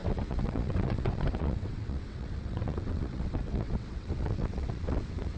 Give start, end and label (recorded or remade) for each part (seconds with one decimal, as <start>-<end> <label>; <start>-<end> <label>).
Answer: 0.0-5.4 remade